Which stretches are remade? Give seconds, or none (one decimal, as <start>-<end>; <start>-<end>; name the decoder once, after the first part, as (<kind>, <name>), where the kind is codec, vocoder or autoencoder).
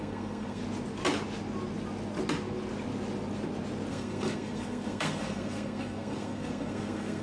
0.0-0.6 (codec, SNAC); 3.9-7.2